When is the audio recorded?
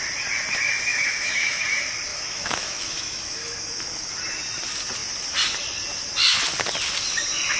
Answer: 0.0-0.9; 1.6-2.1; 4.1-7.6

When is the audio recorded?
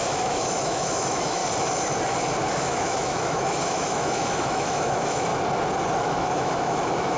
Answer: 1.4-2.5; 5.3-6.0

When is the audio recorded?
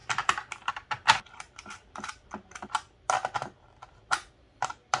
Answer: 0.0-5.0